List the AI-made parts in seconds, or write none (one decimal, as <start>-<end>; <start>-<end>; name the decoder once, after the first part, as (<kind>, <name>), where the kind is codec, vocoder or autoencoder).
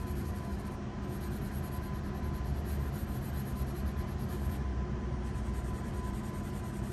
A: 0.0-0.9 (codec, DAC); 4.3-4.7